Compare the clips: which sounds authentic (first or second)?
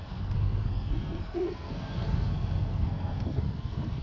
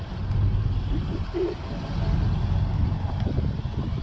second